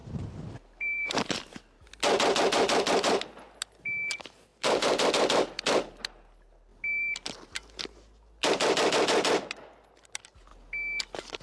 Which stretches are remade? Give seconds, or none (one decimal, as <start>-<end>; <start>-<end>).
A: 0.0-1.9; 4.5-5.1